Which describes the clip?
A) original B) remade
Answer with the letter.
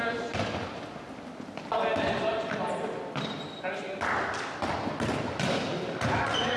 A